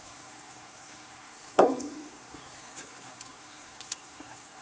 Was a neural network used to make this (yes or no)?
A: yes